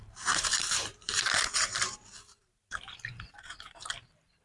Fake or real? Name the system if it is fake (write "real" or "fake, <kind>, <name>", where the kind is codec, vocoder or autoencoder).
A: fake, vocoder, BigVGAN v2